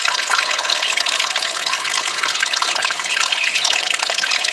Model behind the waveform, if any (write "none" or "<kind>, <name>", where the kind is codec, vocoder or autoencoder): codec, HILCodec